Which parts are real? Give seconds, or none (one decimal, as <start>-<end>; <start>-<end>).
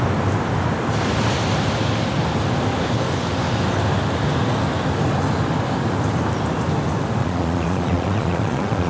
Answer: 0.0-7.2